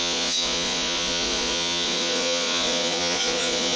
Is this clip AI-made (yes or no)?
yes